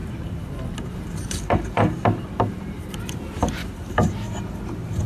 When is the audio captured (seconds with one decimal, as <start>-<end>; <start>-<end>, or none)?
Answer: 3.0-3.6; 4.1-5.1